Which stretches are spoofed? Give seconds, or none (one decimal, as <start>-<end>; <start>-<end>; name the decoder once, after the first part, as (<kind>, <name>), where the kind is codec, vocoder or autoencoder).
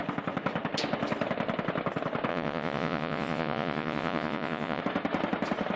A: 2.3-4.8 (vocoder, Vocos)